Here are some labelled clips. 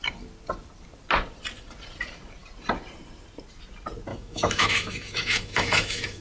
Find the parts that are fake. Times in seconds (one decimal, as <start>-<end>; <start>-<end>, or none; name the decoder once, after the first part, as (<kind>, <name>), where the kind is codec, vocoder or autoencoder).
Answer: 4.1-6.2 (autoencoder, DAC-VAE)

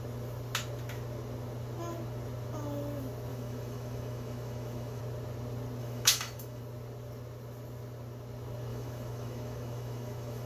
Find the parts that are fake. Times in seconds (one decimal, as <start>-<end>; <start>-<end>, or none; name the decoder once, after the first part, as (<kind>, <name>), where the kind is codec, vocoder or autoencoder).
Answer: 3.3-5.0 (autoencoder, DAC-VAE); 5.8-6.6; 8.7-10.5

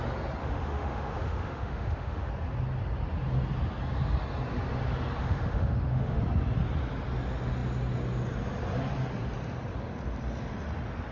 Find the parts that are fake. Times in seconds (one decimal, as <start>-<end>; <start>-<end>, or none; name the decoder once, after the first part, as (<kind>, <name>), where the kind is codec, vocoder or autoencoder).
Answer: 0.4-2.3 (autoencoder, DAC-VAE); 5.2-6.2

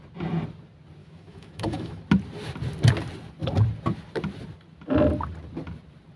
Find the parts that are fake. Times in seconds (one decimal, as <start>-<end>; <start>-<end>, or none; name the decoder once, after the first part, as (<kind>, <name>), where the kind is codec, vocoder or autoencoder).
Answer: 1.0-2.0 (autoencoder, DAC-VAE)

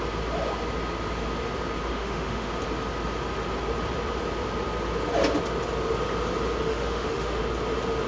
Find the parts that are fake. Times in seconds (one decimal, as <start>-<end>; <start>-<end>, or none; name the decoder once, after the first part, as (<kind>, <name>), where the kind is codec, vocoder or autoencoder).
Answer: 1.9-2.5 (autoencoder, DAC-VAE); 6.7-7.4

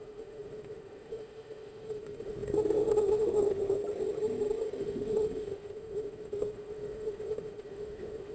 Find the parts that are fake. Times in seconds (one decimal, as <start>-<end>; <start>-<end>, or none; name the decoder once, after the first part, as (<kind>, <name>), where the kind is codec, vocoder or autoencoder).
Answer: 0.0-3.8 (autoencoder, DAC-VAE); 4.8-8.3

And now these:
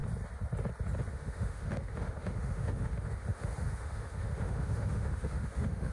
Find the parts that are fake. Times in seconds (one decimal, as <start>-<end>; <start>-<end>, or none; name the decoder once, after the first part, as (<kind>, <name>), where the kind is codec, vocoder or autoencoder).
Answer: 1.1-5.9 (autoencoder, DAC-VAE)